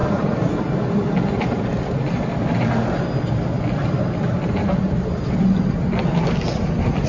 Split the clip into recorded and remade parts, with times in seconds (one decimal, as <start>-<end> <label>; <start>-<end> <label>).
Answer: 0.0-7.1 recorded